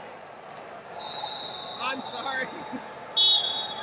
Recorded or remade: recorded